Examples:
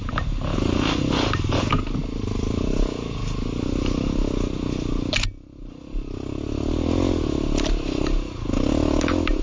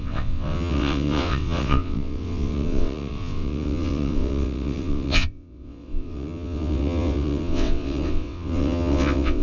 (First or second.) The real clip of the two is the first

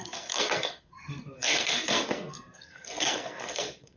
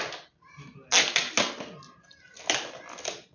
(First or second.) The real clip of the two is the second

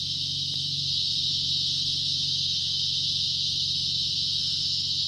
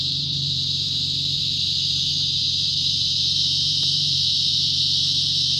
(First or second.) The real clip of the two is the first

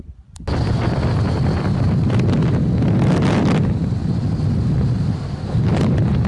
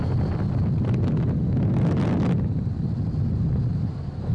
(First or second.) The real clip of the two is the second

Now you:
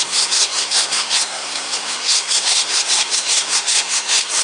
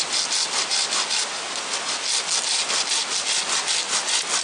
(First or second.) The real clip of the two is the second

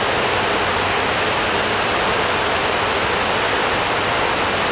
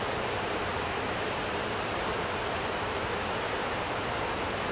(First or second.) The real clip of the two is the first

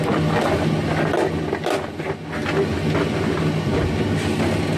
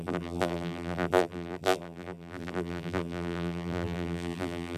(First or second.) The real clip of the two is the first